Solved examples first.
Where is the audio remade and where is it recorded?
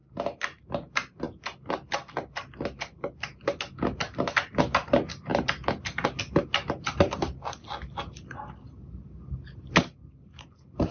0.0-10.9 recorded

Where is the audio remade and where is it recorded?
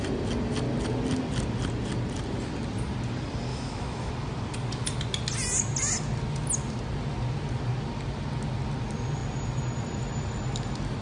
0.0-3.5 recorded; 3.5-4.1 remade; 4.1-11.0 recorded